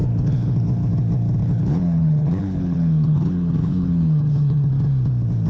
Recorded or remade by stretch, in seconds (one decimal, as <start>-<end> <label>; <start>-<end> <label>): 0.0-0.9 remade; 0.9-1.4 recorded; 1.4-4.7 remade; 4.7-5.5 recorded